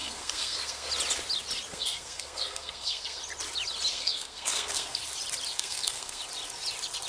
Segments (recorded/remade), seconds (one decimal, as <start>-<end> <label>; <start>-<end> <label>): 0.0-0.9 remade; 0.9-1.7 recorded; 1.7-3.2 remade; 3.2-3.9 recorded; 3.9-5.0 remade; 5.0-5.5 recorded; 5.5-6.2 remade; 6.2-7.1 recorded